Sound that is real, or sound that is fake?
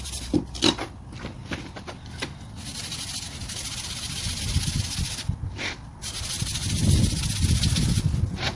real